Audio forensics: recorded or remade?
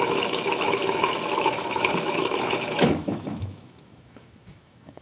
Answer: remade